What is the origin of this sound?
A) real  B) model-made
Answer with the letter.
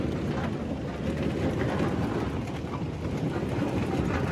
A